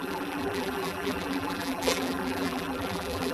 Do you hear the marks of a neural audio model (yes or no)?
yes